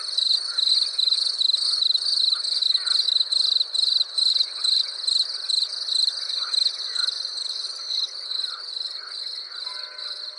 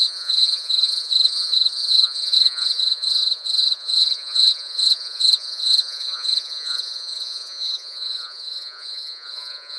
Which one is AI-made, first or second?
second